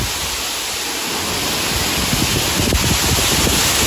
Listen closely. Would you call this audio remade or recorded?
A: recorded